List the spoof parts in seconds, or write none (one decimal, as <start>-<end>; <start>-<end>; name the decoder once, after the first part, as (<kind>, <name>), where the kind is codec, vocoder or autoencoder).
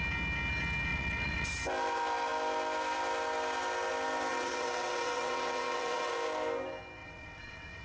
0.9-1.5 (vocoder, WaveNeXt); 4.3-6.1; 7.0-7.8